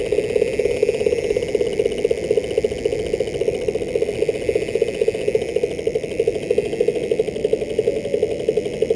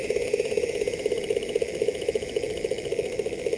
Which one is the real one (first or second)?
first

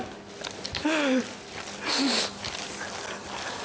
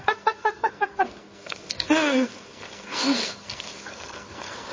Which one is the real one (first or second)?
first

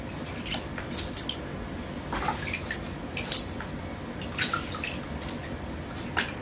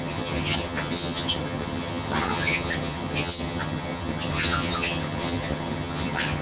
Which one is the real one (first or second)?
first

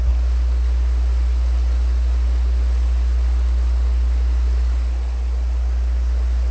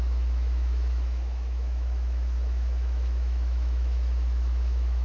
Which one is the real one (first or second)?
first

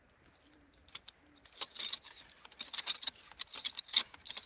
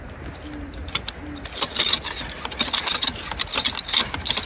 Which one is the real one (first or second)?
second